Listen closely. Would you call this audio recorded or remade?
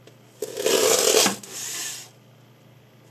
recorded